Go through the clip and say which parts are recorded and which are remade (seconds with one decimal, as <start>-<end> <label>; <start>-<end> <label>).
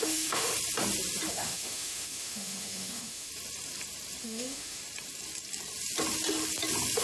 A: 0.0-0.5 remade; 0.5-1.3 recorded; 1.3-3.3 remade; 3.3-4.2 recorded; 4.2-4.8 remade; 4.8-7.0 recorded